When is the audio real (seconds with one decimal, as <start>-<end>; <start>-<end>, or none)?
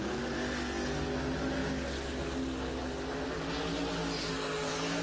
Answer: 0.0-5.0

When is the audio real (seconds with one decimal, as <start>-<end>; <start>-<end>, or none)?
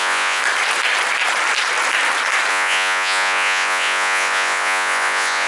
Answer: 0.4-2.5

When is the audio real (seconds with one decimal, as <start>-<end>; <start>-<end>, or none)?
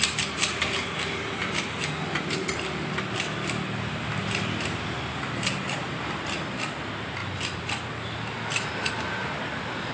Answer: 0.0-9.9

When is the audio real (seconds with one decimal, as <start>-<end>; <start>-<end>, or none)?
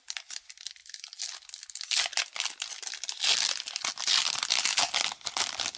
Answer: 0.0-5.8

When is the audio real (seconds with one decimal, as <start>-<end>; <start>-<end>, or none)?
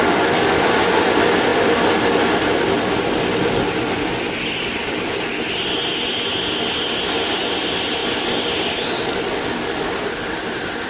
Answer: 0.0-10.9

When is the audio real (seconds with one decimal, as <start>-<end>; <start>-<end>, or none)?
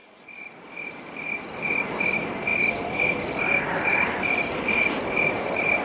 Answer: 0.0-5.8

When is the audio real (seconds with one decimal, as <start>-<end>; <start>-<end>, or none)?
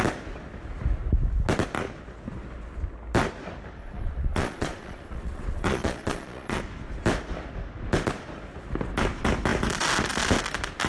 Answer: 0.0-3.8; 6.6-10.9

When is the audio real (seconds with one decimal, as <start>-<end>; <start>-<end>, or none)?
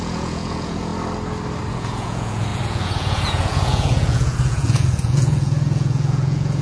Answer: 0.9-1.7